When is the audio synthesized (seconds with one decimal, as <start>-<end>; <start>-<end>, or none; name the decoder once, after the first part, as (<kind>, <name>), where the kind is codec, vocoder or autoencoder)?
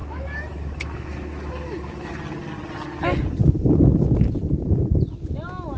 0.0-2.1 (autoencoder, DAC-VAE)